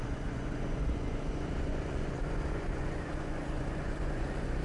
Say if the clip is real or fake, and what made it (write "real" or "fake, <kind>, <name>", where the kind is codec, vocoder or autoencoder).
fake, vocoder, Vocos